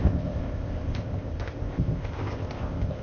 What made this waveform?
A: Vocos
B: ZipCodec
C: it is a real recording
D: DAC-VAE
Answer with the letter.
B